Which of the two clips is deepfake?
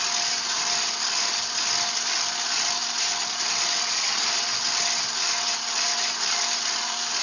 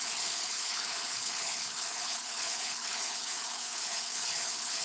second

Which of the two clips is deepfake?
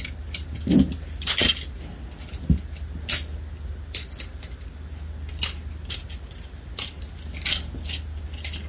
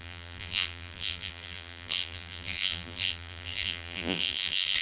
second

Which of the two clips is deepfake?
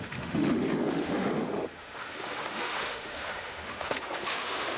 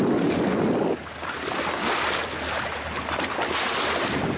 first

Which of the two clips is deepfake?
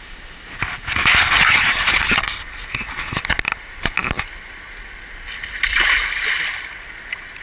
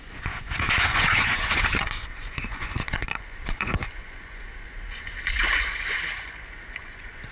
second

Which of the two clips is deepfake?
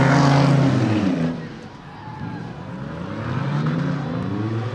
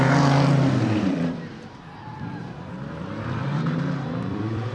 second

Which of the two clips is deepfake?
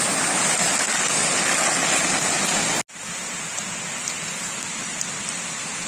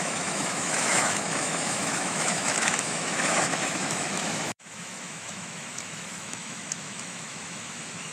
second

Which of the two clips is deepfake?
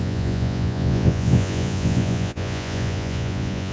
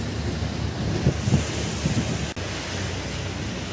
first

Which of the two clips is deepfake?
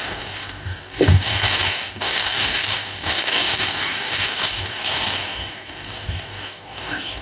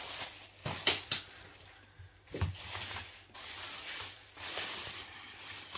first